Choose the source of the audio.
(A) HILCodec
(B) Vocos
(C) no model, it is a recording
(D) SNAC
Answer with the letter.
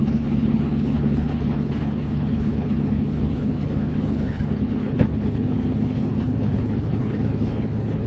A